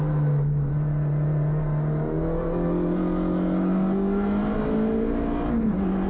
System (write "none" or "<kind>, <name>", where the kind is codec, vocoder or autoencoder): none